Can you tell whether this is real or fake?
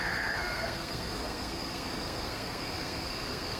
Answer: fake